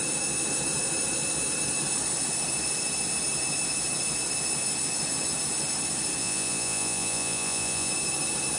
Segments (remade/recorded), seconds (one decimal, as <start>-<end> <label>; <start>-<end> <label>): 0.0-6.2 recorded; 6.2-7.9 remade; 7.9-8.6 recorded